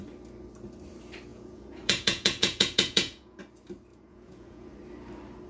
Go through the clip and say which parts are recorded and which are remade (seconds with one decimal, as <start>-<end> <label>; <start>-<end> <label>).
0.0-1.3 recorded; 1.3-3.4 remade; 3.4-3.9 recorded; 3.9-4.7 remade; 4.7-5.5 recorded